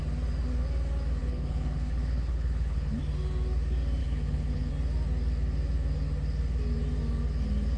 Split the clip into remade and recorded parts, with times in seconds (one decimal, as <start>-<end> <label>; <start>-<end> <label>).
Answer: 0.0-1.2 recorded; 1.2-3.0 remade; 3.0-4.0 recorded; 4.0-4.7 remade; 4.7-7.8 recorded